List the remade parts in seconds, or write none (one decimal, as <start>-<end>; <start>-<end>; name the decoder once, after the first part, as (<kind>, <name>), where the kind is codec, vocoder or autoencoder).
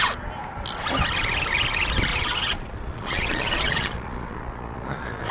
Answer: 2.1-5.3 (vocoder, Vocos)